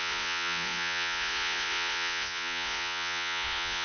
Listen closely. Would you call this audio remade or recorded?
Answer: remade